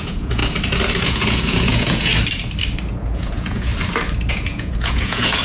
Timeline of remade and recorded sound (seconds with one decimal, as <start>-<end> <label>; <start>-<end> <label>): 0.0-0.4 remade; 0.4-1.0 recorded; 1.0-2.1 remade; 2.1-3.0 recorded; 3.0-3.7 remade; 3.7-4.3 recorded; 4.3-5.4 remade